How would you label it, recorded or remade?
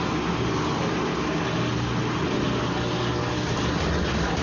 recorded